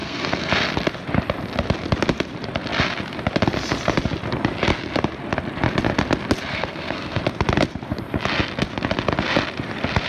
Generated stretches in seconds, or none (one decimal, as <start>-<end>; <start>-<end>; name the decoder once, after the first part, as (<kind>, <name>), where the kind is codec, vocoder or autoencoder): 0.0-0.5 (codec, SNAC); 6.5-7.2